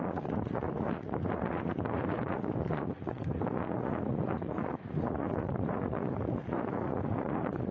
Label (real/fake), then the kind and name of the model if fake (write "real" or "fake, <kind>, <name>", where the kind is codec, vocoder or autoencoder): fake, vocoder, Vocos